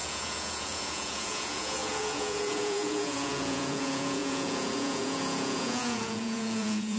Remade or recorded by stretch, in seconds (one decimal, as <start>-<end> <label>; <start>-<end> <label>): 0.0-7.0 remade